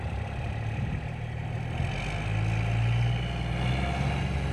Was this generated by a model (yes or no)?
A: no